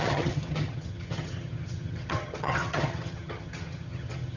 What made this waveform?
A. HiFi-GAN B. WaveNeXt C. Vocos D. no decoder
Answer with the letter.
A